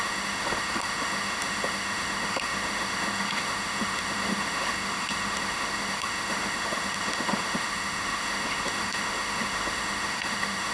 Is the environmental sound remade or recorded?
remade